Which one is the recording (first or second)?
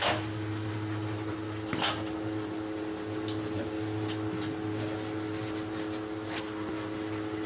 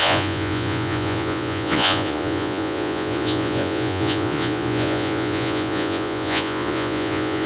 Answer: first